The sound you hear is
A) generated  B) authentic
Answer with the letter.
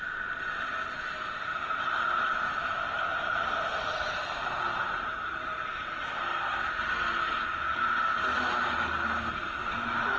B